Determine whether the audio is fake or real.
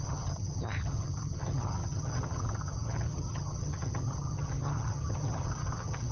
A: fake